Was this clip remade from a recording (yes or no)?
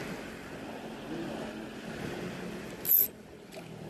no